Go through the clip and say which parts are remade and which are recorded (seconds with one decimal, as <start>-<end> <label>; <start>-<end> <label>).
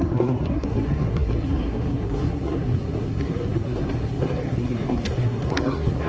0.0-6.1 remade